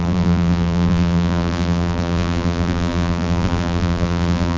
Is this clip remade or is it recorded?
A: remade